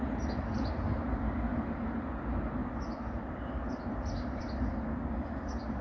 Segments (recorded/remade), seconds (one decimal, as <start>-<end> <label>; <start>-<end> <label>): 0.0-5.8 recorded